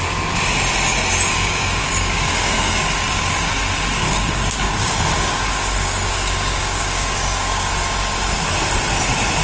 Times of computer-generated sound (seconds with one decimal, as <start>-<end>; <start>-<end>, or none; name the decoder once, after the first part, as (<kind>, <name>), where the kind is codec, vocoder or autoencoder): 1.3-3.5 (codec, DAC); 4.0-7.7